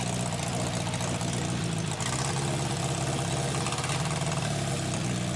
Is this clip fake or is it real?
real